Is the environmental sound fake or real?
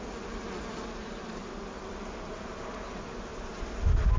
real